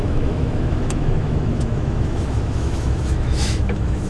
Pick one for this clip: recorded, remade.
remade